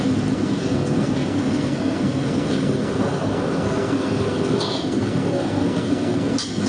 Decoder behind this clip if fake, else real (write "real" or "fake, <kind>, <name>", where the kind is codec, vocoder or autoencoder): fake, codec, SNAC